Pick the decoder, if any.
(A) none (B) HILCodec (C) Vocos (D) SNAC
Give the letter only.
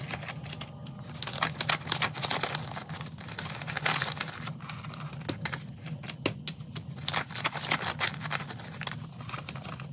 A